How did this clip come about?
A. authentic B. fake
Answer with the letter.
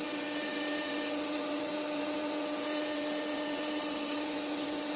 B